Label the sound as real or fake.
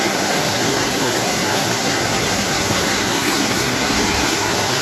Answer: fake